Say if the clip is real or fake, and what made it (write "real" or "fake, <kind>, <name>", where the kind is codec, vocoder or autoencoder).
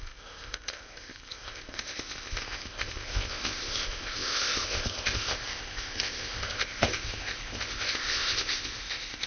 fake, codec, ZipCodec